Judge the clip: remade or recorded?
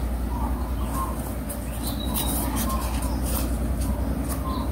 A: recorded